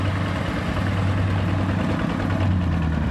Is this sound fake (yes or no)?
no